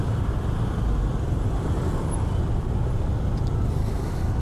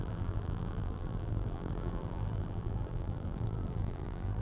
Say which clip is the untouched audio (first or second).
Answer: first